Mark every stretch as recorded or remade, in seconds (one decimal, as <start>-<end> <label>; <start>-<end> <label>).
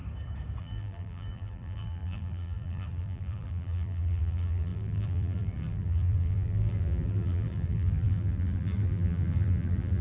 0.0-0.6 recorded; 0.6-10.0 remade